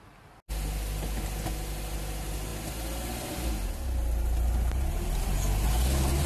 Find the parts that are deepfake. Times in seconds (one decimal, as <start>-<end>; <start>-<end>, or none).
none

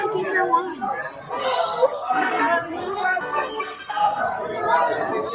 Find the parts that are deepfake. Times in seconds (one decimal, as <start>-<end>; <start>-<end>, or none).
1.4-2.4; 2.8-4.2

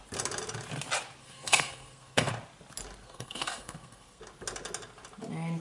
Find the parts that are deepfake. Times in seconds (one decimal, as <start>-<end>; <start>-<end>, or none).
1.2-2.3; 3.0-4.2

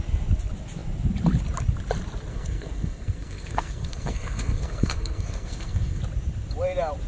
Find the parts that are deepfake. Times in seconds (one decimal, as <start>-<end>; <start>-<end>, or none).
2.3-6.0

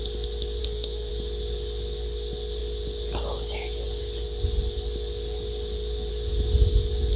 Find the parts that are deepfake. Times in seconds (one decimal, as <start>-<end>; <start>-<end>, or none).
0.6-1.1

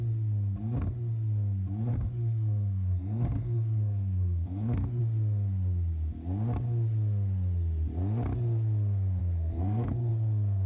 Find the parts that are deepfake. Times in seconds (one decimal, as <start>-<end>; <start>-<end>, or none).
1.9-5.0; 9.2-10.1

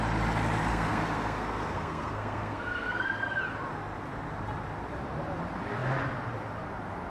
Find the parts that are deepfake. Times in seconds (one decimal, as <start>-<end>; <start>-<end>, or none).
0.7-3.4